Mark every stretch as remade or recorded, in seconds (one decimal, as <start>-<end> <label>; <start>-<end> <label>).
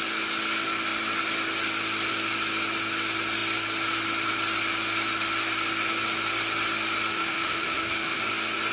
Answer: 0.0-7.1 recorded; 7.1-8.2 remade; 8.2-8.7 recorded